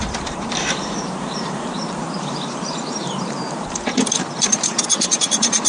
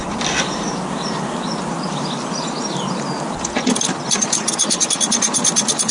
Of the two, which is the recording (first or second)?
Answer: second